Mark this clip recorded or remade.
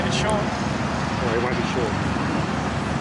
recorded